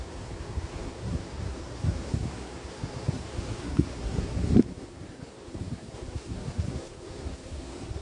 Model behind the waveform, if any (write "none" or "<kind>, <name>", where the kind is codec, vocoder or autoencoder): codec, SNAC